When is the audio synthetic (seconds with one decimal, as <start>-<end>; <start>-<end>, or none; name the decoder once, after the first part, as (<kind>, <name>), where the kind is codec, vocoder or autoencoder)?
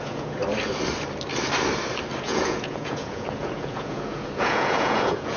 0.0-0.4 (vocoder, Vocos); 2.2-5.4